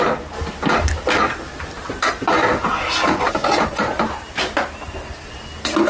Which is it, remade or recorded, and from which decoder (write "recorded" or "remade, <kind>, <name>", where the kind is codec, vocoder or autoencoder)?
recorded